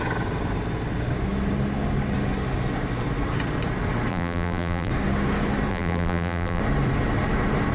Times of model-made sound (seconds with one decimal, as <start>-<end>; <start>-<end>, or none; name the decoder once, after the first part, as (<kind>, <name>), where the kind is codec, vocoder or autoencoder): 4.1-4.9 (vocoder, BigVGAN v2); 5.7-6.6